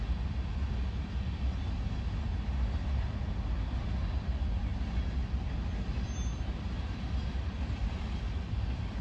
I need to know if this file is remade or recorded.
recorded